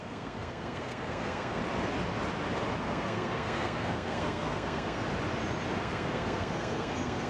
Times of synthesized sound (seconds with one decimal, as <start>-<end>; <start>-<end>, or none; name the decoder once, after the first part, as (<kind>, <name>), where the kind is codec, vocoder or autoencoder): 0.0-1.6 (codec, SNAC); 2.8-5.0; 5.8-7.3